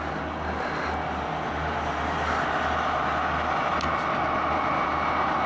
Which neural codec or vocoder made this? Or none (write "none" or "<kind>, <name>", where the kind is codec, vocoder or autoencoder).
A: none